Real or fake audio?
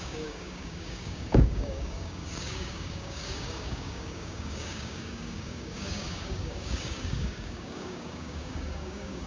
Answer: fake